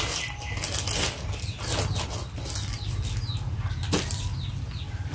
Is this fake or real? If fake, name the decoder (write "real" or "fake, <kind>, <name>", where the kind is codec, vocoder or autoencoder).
real